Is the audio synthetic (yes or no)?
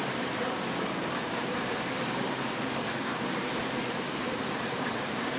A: yes